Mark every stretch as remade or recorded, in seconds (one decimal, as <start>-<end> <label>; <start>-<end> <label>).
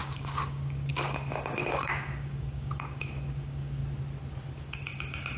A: 0.0-3.8 remade; 3.8-4.7 recorded; 4.7-5.4 remade